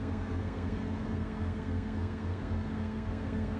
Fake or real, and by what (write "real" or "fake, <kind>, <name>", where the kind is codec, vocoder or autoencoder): fake, codec, SNAC